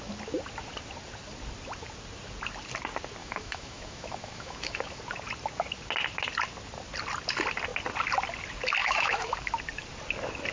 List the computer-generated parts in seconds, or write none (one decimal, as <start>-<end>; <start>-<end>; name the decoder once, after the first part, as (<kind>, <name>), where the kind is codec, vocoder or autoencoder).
3.2-5.0 (autoencoder, DAC-VAE); 8.8-9.5